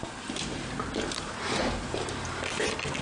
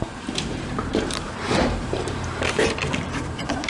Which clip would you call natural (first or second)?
first